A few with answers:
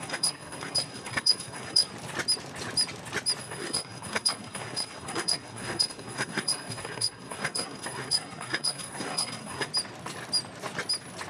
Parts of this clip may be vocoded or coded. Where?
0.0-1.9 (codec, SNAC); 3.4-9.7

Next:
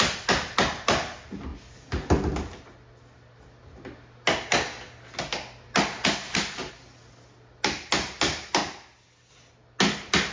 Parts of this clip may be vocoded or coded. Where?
none